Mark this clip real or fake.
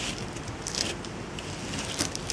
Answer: real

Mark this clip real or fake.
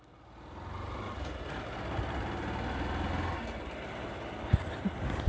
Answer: real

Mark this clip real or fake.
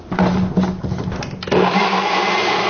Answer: real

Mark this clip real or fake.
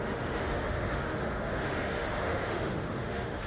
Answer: fake